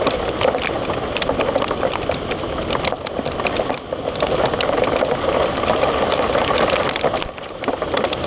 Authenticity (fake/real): real